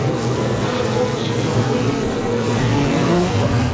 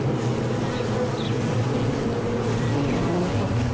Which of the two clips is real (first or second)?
second